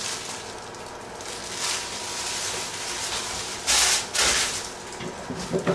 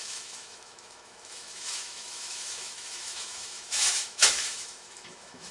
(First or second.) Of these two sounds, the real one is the first